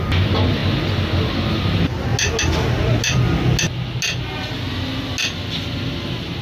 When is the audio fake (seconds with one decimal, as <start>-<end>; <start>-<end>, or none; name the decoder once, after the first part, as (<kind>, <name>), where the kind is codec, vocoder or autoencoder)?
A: none